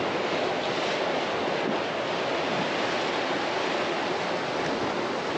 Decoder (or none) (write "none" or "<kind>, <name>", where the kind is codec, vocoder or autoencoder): none